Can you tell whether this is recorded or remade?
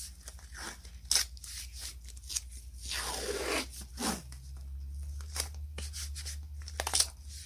recorded